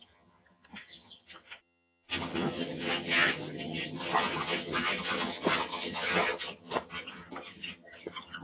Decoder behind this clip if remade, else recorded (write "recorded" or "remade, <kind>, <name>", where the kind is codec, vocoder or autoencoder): remade, vocoder, HiFi-GAN